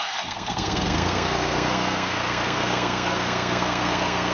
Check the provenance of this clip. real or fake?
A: fake